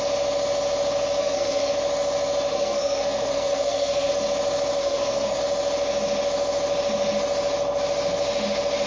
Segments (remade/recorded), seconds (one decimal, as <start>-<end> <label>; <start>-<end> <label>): 0.0-1.2 recorded; 1.2-1.7 remade; 1.7-2.5 recorded; 2.5-4.1 remade; 4.1-4.8 recorded; 4.8-5.4 remade; 5.4-8.9 recorded